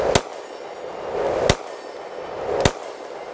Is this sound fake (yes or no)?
no